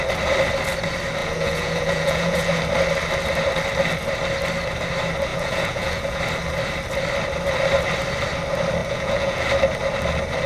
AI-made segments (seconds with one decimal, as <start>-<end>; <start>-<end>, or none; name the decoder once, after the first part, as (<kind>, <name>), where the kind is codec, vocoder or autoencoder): 1.2-2.6 (vocoder, Vocos); 5.3-6.2; 8.8-9.4